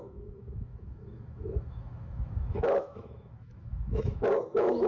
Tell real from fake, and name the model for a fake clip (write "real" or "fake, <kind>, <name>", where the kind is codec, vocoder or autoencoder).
fake, autoencoder, DAC-VAE